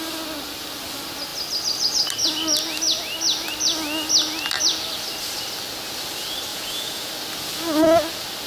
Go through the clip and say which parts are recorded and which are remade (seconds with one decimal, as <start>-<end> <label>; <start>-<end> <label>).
0.0-6.5 recorded; 6.5-7.1 remade; 7.1-8.5 recorded